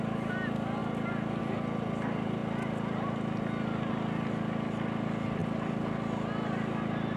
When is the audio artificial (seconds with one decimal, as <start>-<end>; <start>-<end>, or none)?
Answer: none